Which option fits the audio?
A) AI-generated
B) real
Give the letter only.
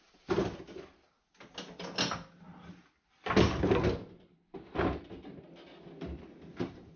B